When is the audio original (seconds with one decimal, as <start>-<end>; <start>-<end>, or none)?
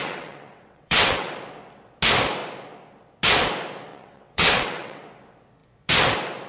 1.3-3.9; 5.1-6.5